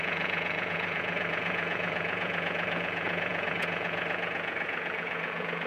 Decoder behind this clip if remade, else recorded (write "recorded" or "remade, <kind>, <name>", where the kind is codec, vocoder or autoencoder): remade, vocoder, Vocos